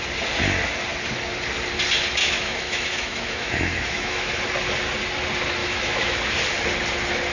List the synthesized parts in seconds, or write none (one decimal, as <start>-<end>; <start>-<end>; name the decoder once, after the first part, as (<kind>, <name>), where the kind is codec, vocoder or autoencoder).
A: 2.2-4.4 (autoencoder, DAC-VAE); 5.6-6.2